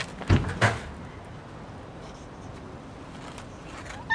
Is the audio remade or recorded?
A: recorded